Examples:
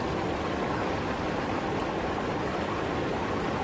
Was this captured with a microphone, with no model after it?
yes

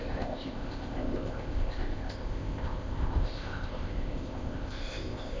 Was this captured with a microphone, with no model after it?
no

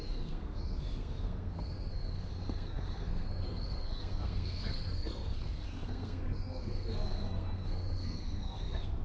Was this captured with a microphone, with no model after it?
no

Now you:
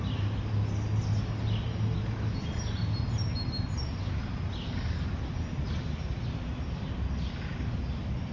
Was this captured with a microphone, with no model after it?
yes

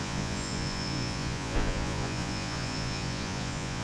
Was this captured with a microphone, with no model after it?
no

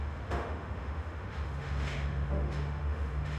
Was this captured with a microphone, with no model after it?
no